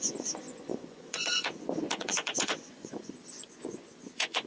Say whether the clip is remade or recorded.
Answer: remade